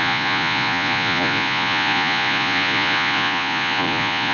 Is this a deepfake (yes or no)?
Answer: yes